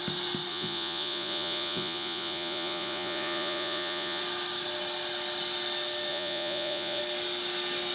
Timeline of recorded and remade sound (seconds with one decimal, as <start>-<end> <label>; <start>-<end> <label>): 0.0-0.5 recorded; 0.5-4.2 remade; 4.2-6.1 recorded; 6.1-7.0 remade; 7.0-7.9 recorded